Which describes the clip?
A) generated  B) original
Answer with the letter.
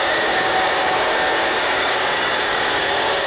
A